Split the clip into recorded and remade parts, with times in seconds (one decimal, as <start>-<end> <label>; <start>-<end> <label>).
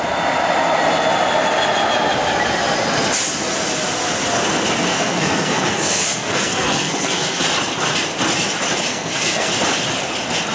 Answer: 0.0-4.9 recorded; 4.9-7.4 remade; 7.4-8.9 recorded; 8.9-9.5 remade; 9.5-10.5 recorded